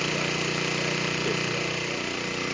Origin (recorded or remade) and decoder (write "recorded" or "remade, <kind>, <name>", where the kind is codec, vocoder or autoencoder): recorded